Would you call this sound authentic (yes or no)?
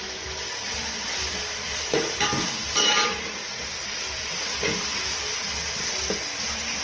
yes